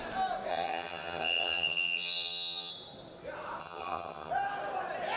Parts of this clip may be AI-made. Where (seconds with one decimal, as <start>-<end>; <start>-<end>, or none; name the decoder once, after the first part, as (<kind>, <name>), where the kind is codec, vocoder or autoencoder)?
0.5-2.7 (vocoder, HiFi-GAN); 3.6-4.3